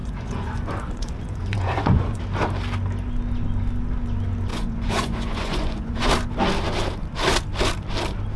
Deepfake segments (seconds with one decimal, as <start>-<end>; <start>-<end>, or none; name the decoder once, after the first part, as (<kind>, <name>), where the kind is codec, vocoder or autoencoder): 0.0-2.2 (vocoder, Vocos); 4.5-6.1